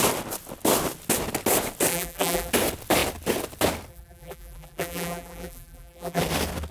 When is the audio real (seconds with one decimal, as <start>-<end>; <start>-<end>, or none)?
0.0-1.9; 2.5-3.9; 6.2-6.7

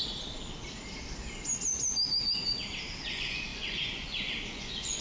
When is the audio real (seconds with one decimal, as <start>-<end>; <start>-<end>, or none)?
0.0-3.0